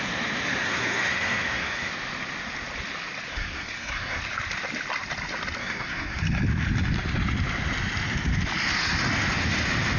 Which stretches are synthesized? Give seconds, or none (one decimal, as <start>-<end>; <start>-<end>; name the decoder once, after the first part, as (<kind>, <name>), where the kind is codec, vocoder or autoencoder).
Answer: 0.6-1.9 (codec, SNAC); 3.3-4.2; 5.6-6.2